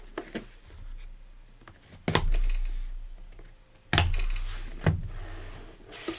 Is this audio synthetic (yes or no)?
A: no